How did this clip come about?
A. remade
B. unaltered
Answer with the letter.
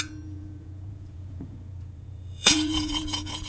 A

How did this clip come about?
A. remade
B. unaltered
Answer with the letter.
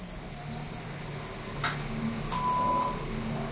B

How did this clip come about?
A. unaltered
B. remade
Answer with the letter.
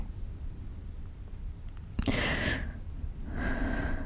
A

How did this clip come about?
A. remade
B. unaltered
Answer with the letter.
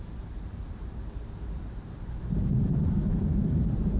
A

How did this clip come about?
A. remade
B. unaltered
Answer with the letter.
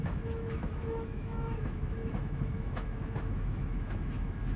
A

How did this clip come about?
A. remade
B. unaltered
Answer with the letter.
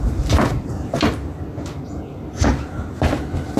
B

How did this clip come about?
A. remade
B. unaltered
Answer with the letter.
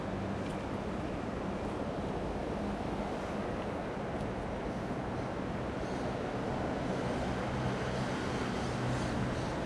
B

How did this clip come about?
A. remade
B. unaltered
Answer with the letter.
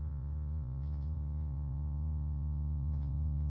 A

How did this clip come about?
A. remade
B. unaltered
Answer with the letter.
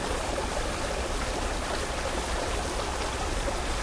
A